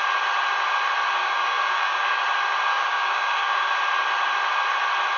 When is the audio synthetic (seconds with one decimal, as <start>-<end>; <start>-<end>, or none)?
1.2-2.2; 2.7-3.7